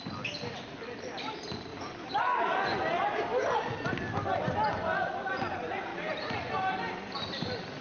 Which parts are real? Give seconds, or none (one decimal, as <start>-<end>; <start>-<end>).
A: 0.0-1.7; 2.2-5.9; 6.5-7.8